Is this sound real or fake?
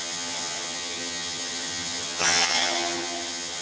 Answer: fake